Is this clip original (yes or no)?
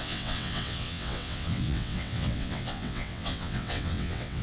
no